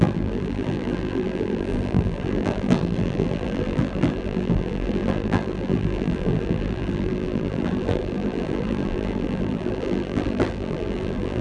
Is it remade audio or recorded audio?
remade